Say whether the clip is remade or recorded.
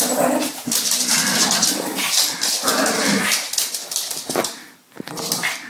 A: recorded